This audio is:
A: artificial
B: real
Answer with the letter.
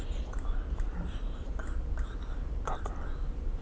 A